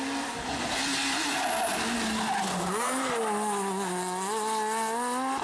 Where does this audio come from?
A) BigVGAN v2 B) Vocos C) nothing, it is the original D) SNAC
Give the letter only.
C